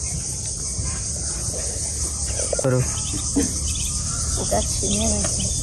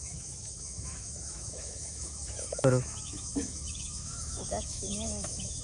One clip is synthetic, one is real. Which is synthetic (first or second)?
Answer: second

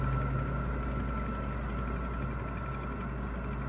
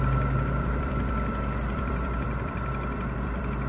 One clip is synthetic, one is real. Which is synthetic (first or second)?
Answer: second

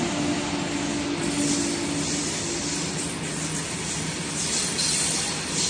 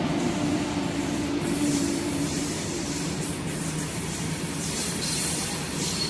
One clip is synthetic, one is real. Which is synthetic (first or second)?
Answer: second